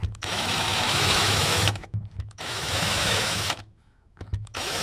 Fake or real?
fake